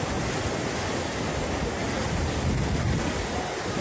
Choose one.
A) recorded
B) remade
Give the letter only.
A